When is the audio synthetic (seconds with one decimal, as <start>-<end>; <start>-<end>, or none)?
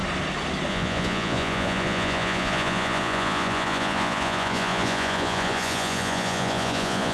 0.7-7.1